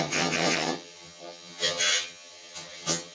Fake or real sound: fake